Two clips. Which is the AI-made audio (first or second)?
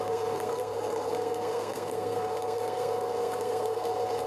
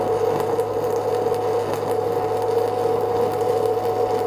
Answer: first